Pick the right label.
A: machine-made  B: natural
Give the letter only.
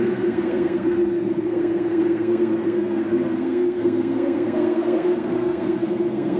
A